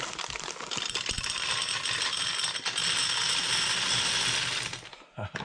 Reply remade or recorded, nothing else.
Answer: recorded